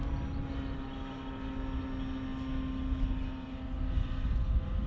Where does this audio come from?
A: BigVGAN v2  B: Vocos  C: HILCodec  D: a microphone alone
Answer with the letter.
D